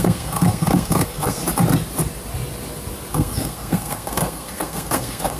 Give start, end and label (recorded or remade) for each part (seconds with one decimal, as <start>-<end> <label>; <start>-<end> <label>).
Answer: 0.0-1.4 remade; 1.4-3.1 recorded; 3.1-5.4 remade